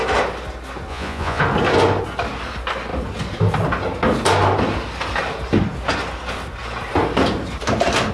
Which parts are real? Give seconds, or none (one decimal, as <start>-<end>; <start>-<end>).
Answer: 0.0-0.9; 1.4-8.1